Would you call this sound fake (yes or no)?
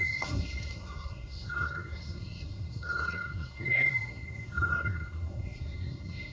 yes